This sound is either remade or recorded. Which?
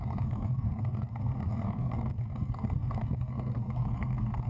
remade